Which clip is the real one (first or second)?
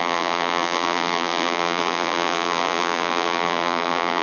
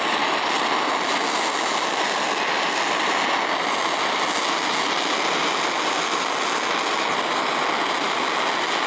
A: second